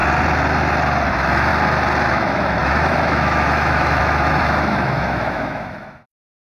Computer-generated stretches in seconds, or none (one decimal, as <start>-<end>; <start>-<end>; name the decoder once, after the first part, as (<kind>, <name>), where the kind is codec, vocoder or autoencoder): 1.1-1.5 (autoencoder, DAC-VAE); 2.1-6.4